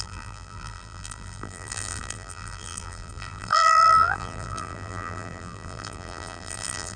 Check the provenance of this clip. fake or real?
fake